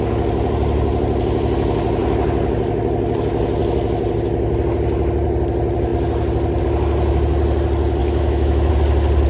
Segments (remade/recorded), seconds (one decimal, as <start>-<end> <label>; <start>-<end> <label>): 0.0-8.0 recorded; 8.0-8.7 remade; 8.7-9.3 recorded